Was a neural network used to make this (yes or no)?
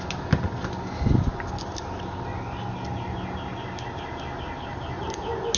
no